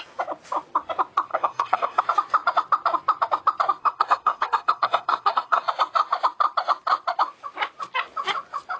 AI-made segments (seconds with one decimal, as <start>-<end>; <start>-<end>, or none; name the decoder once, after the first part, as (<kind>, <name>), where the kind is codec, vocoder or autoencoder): 1.3-2.0 (codec, SNAC); 3.8-5.6